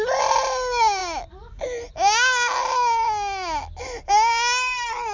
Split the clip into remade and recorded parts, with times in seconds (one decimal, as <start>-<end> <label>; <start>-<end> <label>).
0.0-5.1 recorded